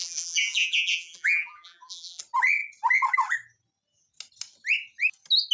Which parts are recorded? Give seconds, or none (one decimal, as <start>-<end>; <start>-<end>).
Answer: 2.2-5.5